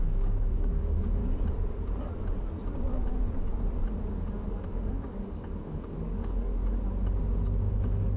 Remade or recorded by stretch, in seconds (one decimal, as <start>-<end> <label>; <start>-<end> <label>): 0.0-1.2 remade; 1.2-4.5 recorded; 4.5-6.6 remade; 6.6-7.7 recorded; 7.7-8.2 remade